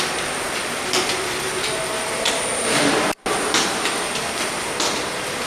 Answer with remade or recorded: recorded